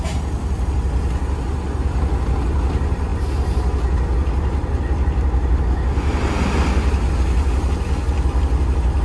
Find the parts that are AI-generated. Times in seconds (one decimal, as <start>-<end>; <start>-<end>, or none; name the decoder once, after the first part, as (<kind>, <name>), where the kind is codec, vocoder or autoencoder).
none